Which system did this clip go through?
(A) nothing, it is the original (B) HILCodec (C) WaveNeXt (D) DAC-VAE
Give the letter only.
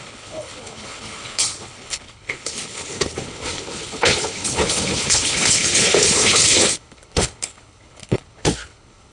B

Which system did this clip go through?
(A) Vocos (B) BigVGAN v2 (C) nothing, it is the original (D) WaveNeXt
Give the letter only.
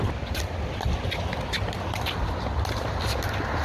C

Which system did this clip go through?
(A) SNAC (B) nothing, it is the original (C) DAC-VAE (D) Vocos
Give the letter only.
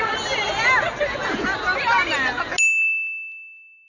B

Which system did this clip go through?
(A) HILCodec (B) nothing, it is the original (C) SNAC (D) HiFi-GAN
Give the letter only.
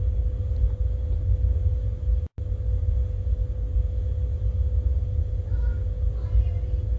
B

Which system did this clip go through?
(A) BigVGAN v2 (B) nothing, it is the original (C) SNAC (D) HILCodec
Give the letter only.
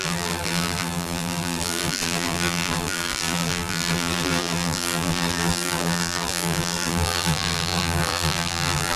A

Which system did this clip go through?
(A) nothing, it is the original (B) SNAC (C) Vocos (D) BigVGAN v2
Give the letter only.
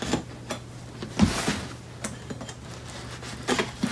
A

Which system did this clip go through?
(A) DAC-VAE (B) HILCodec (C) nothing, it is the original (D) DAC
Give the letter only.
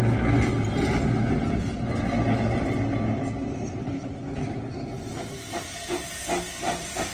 C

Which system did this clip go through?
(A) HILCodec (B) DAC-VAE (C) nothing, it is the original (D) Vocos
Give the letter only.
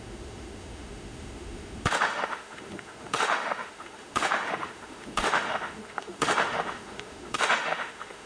B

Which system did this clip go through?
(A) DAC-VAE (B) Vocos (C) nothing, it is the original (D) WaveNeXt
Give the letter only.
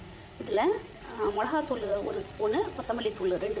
B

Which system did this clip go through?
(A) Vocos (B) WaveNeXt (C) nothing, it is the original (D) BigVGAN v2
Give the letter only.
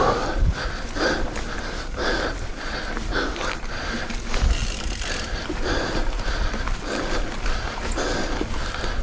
D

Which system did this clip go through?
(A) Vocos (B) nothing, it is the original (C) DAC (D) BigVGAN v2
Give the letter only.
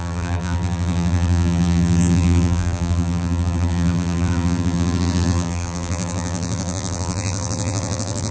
D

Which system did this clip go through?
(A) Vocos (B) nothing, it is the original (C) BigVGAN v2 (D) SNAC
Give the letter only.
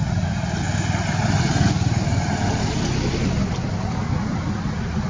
B